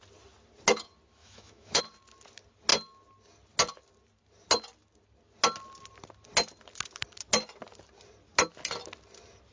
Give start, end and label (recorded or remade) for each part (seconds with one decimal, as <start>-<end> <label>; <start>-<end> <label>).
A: 0.0-1.2 recorded; 1.2-1.8 remade; 1.8-9.5 recorded